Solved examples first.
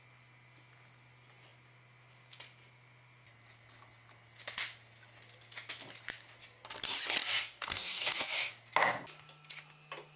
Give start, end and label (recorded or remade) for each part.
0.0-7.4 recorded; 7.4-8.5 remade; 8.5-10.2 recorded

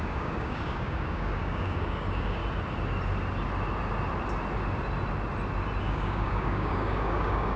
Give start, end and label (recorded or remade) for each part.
0.0-2.4 remade; 2.4-5.8 recorded; 5.8-7.6 remade

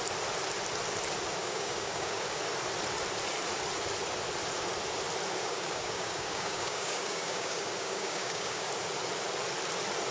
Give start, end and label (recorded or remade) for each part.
0.0-1.4 recorded; 1.4-2.4 remade; 2.4-5.4 recorded; 5.4-8.7 remade; 8.7-10.1 recorded

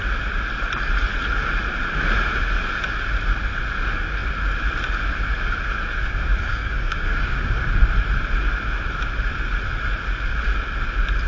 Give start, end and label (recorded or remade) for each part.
0.0-6.5 recorded; 6.5-7.6 remade; 7.6-11.3 recorded